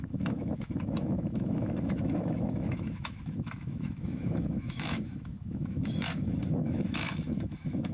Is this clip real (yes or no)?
no